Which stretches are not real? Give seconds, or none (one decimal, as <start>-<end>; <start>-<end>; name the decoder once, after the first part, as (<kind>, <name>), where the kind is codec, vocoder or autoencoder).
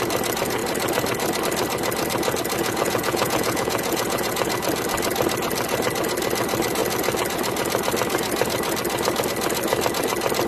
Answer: 2.6-4.5 (vocoder, Vocos)